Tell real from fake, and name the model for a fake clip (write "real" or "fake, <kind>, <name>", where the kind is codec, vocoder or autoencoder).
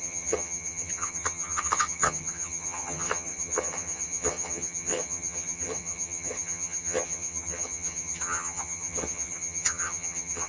fake, vocoder, HiFi-GAN